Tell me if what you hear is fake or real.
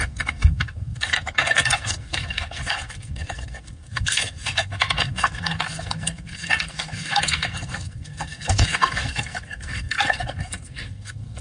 fake